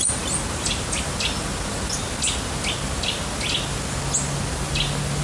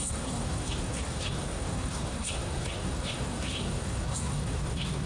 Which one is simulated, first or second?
second